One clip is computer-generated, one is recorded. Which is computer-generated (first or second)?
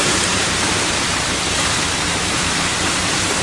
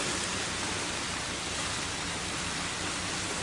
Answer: first